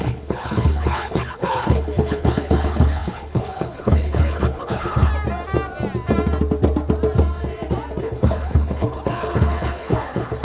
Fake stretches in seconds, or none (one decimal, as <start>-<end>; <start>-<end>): 0.0-5.1; 8.0-10.4

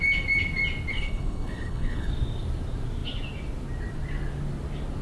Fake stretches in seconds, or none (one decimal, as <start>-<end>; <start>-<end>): 0.9-2.1

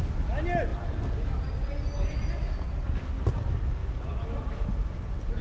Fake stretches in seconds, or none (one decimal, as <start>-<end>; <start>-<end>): none

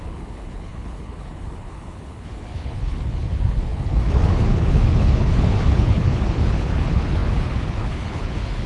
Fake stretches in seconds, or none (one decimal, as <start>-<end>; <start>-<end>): 0.0-8.7